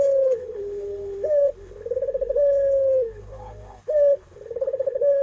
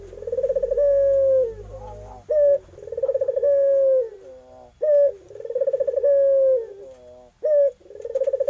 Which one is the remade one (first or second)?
first